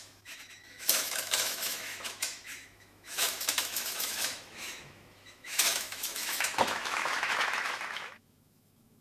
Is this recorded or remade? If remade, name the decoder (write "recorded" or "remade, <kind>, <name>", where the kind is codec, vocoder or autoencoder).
remade, autoencoder, DAC-VAE